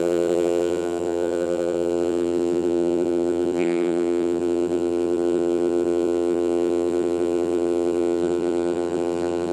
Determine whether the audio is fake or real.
fake